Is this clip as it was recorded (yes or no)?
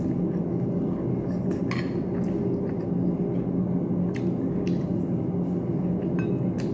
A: yes